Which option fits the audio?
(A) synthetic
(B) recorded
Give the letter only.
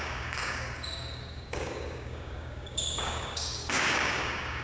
A